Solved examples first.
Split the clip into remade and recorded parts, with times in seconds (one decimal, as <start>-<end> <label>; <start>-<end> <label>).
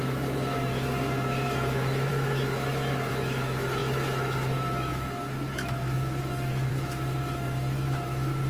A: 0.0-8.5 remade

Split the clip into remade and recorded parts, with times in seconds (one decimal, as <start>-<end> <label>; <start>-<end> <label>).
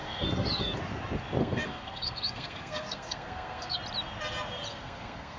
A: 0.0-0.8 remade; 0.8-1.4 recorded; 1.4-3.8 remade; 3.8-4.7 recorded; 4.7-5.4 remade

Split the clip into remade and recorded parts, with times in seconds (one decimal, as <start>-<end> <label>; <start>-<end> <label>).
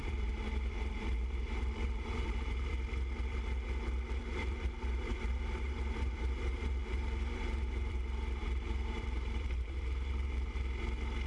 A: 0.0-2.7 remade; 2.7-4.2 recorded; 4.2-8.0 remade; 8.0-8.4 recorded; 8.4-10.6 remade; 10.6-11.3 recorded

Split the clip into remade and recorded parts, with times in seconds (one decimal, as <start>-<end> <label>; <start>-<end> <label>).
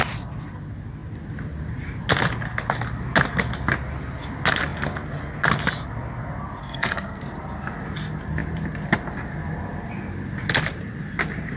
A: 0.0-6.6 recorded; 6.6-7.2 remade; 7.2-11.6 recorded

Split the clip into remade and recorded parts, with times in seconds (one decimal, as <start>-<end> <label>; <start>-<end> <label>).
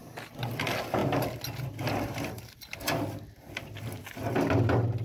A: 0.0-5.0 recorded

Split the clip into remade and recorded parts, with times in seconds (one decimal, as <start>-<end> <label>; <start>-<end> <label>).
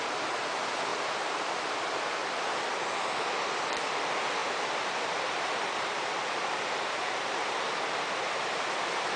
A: 0.0-0.9 recorded; 0.9-1.6 remade; 1.6-4.4 recorded; 4.4-7.3 remade; 7.3-9.2 recorded